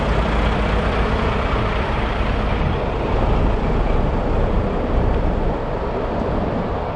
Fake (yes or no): yes